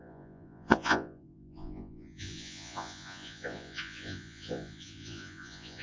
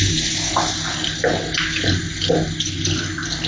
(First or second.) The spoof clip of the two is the first